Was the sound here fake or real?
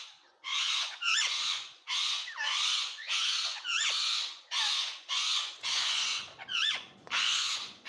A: fake